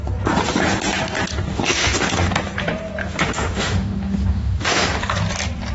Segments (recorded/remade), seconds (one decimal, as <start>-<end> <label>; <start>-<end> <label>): 0.0-1.5 recorded; 1.5-2.3 remade; 2.3-3.0 recorded; 3.0-4.8 remade; 4.8-5.7 recorded